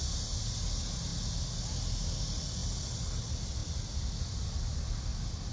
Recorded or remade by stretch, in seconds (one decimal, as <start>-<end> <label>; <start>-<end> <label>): 0.0-5.5 recorded